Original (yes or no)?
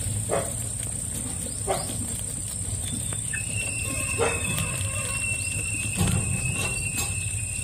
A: yes